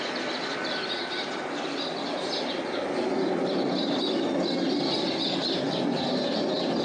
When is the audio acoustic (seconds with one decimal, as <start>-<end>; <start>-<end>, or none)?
0.0-6.8